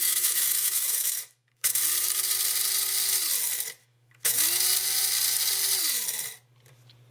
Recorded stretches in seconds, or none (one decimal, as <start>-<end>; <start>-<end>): 1.8-3.8; 4.4-7.1